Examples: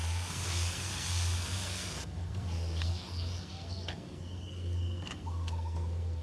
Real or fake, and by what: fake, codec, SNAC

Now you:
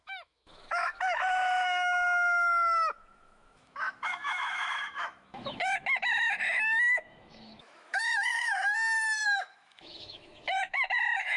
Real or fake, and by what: fake, autoencoder, DAC-VAE